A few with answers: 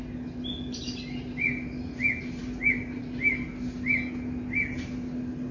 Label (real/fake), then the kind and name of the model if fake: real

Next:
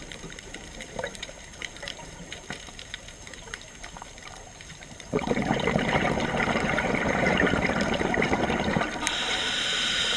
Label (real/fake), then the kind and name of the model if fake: fake, vocoder, BigVGAN v2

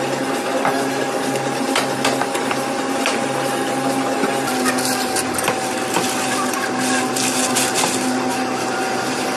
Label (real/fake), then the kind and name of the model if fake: real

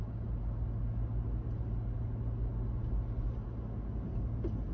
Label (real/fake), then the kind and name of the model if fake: real